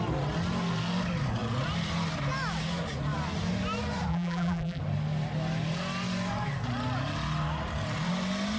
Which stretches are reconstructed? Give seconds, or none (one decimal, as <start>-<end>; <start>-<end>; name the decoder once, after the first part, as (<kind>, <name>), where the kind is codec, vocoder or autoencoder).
4.1-4.8 (vocoder, BigVGAN v2)